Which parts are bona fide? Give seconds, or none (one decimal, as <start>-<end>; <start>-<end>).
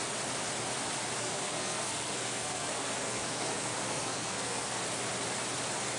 0.0-1.2; 4.8-6.0